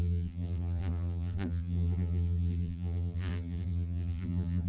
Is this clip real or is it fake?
fake